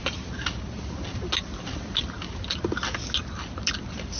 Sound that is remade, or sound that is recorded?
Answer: recorded